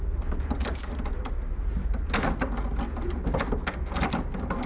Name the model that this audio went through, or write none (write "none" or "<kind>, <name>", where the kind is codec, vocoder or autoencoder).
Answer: none